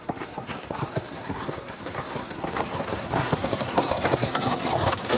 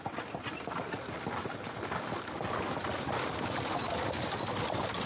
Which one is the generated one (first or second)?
first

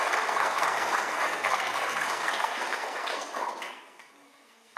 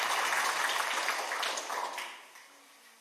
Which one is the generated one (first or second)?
first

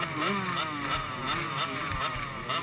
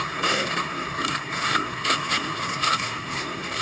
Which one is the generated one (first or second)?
second